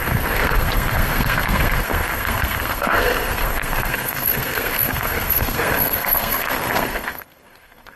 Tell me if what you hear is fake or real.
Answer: fake